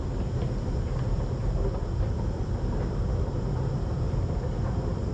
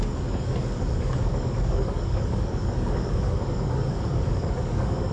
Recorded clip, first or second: first